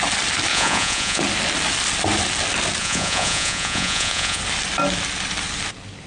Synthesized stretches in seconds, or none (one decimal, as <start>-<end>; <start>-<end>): 0.5-1.2; 2.8-4.4